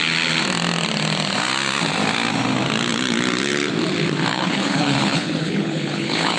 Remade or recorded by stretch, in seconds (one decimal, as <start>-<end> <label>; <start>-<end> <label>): 0.0-4.3 recorded; 4.3-6.4 remade